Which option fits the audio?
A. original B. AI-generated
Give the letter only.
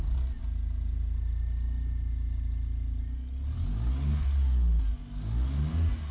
A